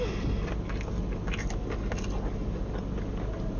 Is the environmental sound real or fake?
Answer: real